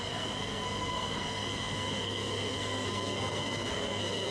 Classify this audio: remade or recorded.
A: remade